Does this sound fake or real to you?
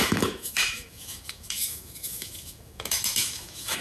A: fake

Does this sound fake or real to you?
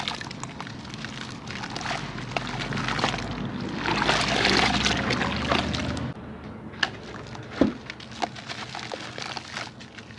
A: real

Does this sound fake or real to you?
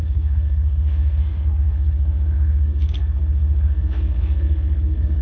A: fake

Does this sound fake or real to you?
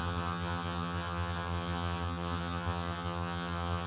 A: fake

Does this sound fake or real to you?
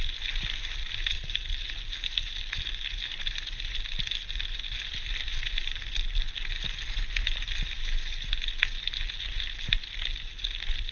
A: real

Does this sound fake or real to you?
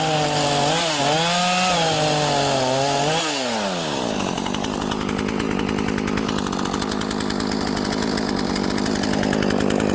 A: real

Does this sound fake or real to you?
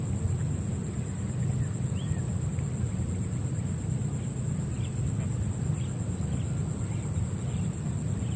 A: real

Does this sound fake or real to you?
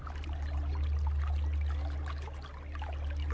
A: real